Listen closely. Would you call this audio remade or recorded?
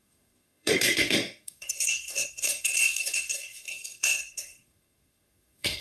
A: remade